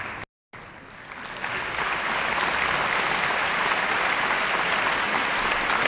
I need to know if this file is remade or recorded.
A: recorded